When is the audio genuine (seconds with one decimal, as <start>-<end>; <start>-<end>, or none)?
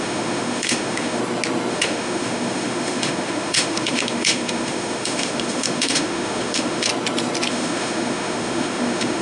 1.2-1.7; 6.9-7.5